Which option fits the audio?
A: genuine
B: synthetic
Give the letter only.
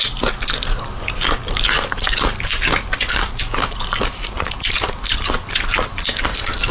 A